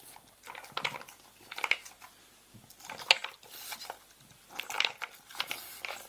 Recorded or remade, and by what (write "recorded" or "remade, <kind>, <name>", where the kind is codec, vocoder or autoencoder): recorded